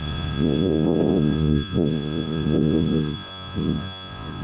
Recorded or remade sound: remade